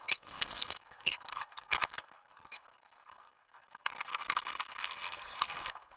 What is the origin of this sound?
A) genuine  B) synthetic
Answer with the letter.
B